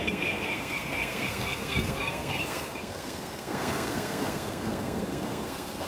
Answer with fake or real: fake